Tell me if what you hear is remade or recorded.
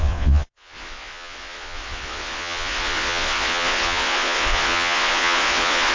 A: remade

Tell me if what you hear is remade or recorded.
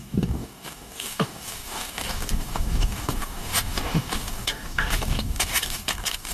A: remade